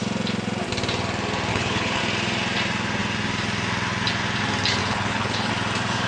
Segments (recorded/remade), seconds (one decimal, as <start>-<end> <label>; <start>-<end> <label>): 0.0-1.5 recorded; 1.5-2.0 remade; 2.0-4.8 recorded; 4.8-5.5 remade; 5.5-6.1 recorded

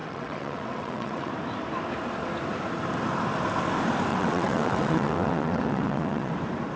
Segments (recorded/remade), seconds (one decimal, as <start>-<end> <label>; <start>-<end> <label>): 0.0-1.3 remade; 1.3-4.1 recorded; 4.1-6.3 remade; 6.3-6.8 recorded

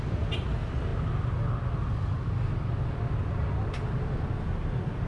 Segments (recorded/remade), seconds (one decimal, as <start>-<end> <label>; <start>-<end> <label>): 0.0-5.1 recorded

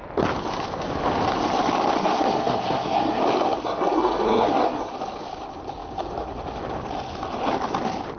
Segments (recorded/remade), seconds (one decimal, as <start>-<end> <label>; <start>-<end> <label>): 0.0-2.0 recorded; 2.0-3.2 remade; 3.2-3.6 recorded; 3.6-4.9 remade; 4.9-8.2 recorded